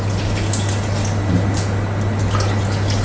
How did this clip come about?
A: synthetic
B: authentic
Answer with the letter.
B